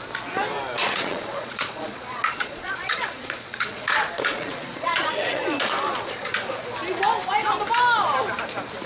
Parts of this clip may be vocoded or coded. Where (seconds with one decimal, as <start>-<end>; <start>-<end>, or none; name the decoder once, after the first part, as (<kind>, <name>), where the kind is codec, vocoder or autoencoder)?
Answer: 0.8-5.4 (vocoder, Vocos)